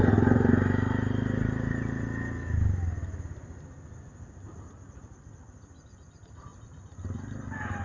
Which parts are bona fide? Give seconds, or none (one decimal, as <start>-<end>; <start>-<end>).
0.0-7.8